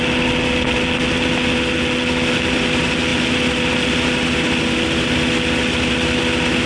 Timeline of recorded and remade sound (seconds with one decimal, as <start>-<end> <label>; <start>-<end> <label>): 0.0-6.7 recorded